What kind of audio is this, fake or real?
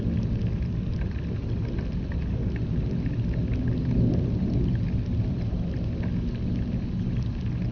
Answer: real